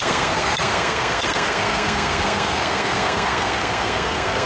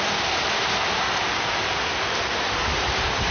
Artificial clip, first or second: first